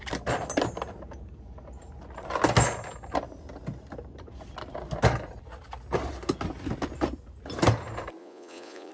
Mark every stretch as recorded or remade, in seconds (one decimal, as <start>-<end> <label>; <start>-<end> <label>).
0.0-8.2 recorded; 8.2-8.9 remade